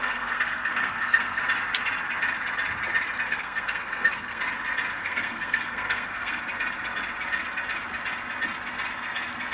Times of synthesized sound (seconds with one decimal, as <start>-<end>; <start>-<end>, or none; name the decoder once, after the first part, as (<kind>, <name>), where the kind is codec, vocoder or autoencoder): 0.0-1.4 (codec, SNAC); 3.3-4.4; 5.0-6.4

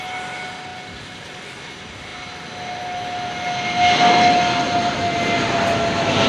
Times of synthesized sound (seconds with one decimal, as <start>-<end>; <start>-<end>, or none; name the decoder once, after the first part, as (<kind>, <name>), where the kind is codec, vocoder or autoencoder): none

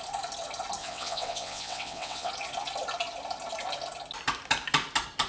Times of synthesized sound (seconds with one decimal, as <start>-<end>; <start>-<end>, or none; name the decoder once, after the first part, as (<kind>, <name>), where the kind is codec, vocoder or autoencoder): 0.8-2.3 (vocoder, WaveNeXt)